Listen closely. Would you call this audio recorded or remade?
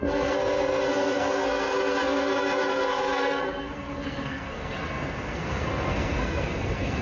remade